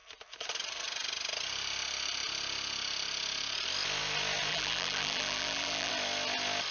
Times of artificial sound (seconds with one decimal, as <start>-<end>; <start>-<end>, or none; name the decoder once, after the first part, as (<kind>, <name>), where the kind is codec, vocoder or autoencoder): 4.5-5.9 (vocoder, BigVGAN v2)